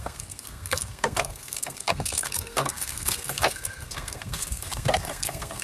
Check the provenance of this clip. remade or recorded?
remade